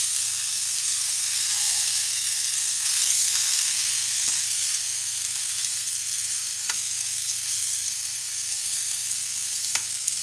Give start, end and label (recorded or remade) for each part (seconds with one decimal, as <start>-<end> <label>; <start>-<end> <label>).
0.0-10.2 remade